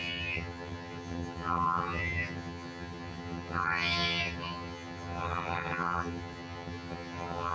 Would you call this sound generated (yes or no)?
yes